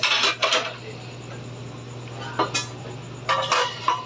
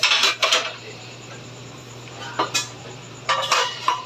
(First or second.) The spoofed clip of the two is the second